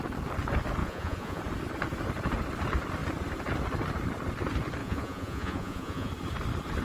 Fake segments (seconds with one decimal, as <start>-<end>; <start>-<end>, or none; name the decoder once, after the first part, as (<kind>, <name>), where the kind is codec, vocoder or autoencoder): 0.8-1.4 (vocoder, Vocos); 4.8-6.1